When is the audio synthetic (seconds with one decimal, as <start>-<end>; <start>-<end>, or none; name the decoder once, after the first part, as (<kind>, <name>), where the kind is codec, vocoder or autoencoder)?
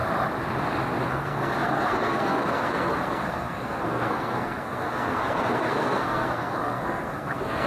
1.1-7.7 (codec, SNAC)